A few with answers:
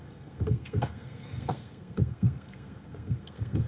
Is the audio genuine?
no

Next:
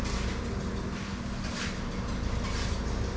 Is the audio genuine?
yes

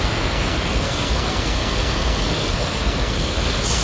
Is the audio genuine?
no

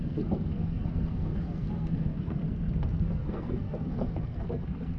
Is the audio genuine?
no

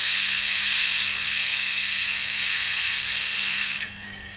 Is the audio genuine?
no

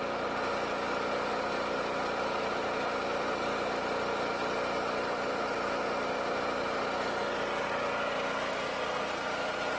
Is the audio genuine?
yes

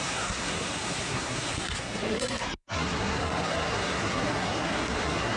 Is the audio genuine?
no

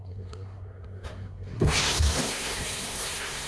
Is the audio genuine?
no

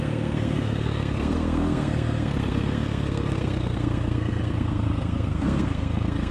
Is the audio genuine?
no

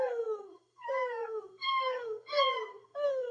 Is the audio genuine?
no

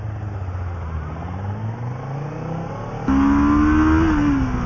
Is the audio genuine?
yes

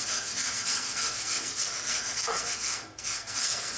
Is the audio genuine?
no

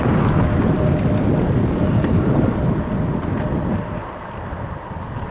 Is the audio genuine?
yes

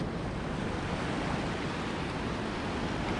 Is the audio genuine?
yes